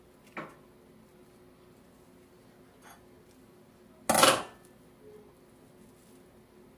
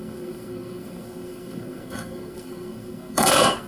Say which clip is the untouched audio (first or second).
first